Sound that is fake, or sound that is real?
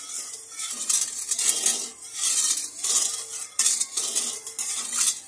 real